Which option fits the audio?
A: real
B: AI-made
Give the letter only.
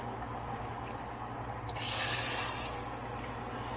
A